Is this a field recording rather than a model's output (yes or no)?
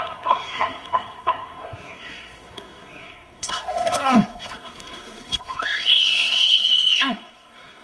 no